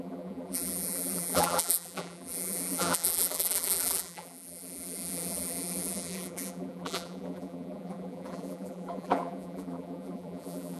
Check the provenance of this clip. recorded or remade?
remade